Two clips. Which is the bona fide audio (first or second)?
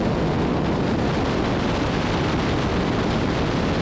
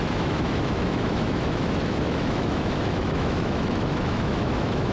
first